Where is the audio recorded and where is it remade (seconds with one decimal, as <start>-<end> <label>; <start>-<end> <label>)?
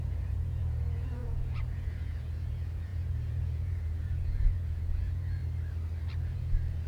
0.0-5.4 remade; 5.4-6.2 recorded; 6.2-6.9 remade